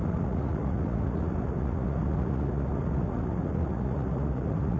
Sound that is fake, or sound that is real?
fake